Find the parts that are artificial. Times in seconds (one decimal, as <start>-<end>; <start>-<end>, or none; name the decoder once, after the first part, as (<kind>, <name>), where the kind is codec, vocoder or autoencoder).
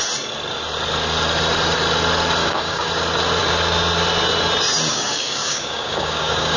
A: 2.4-2.9 (codec, DAC); 4.9-6.6